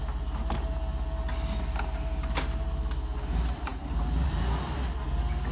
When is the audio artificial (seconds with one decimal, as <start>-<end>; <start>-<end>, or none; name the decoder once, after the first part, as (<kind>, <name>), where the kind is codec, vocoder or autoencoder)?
none